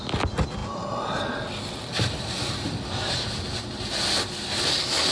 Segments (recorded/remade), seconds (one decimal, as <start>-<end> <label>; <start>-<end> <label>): 0.0-5.1 recorded